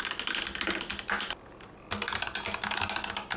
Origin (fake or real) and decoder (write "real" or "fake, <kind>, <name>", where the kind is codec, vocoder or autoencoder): real